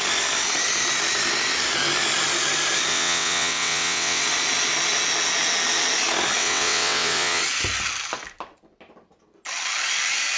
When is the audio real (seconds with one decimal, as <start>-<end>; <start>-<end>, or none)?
0.0-2.9; 4.2-6.4; 7.4-10.4